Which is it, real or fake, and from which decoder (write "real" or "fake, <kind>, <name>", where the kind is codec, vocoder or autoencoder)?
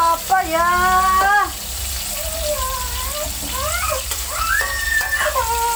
real